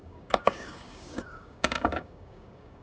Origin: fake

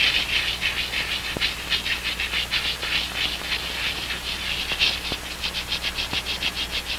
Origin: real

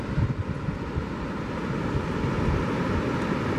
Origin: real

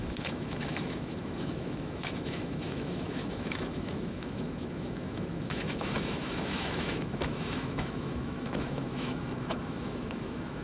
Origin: fake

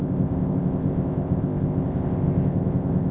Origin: fake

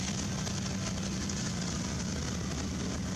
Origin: real